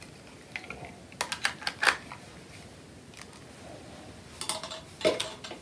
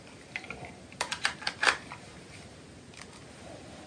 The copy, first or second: second